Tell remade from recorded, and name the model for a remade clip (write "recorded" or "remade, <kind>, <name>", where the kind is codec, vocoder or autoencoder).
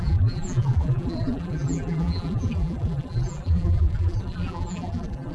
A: remade, vocoder, BigVGAN v2